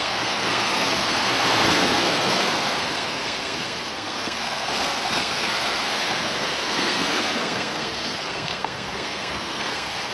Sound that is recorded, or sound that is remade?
remade